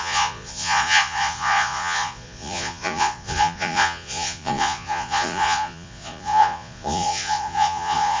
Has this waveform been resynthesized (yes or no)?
yes